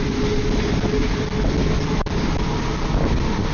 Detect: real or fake real